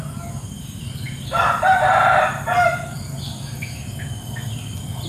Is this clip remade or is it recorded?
remade